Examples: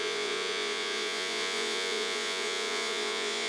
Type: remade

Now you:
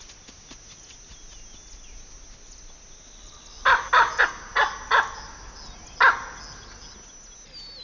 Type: recorded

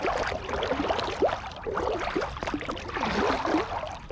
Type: recorded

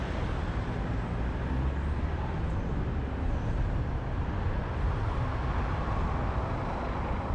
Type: recorded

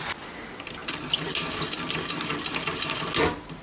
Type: recorded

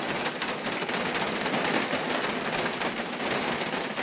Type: recorded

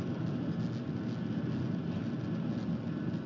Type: recorded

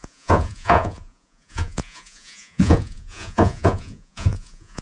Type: remade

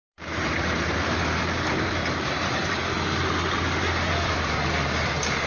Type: remade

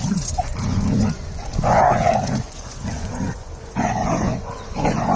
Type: remade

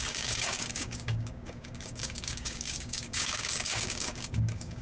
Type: remade